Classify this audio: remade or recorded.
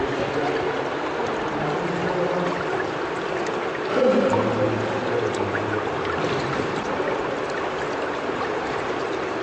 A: recorded